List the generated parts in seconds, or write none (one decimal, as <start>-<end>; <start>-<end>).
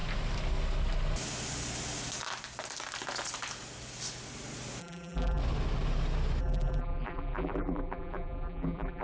4.8-5.4; 6.4-9.0